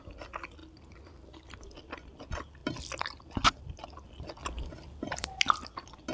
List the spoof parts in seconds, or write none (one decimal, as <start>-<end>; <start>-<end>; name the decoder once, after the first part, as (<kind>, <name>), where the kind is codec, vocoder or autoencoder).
0.6-1.5 (vocoder, BigVGAN v2); 4.4-5.4